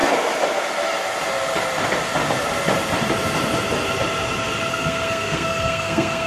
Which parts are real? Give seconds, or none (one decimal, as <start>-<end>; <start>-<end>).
0.0-4.7